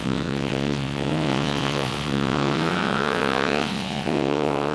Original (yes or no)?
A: no